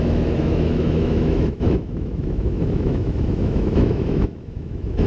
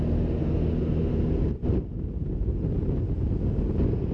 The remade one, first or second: first